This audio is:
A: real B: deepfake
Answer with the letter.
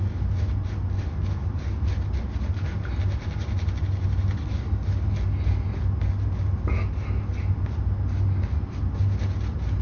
A